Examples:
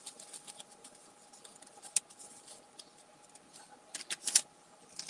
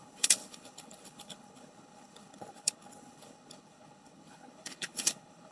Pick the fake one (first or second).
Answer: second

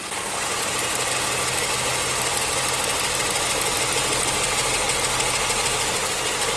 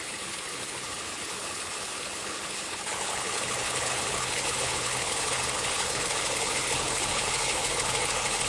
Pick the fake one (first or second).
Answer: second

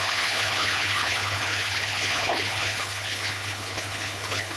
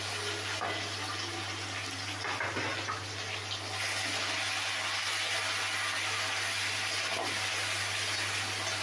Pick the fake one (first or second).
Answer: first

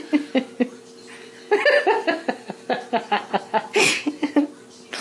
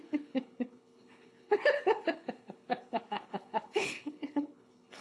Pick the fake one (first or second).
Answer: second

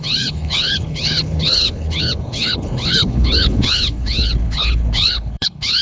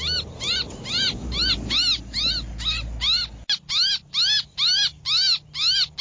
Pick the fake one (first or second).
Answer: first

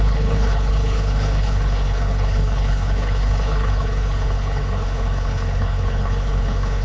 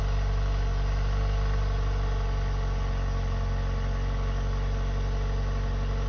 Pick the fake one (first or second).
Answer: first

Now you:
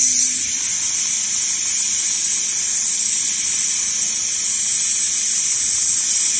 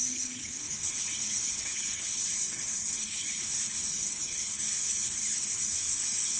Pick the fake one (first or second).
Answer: second